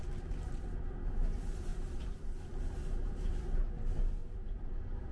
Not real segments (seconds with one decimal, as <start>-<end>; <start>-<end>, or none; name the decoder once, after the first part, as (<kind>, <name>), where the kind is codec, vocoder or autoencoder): 1.7-2.5 (vocoder, BigVGAN v2); 4.2-5.1